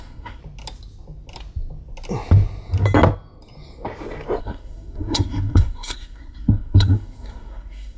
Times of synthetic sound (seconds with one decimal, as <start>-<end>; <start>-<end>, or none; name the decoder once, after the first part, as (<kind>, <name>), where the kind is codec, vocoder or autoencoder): 0.0-0.4 (codec, SNAC); 4.4-8.0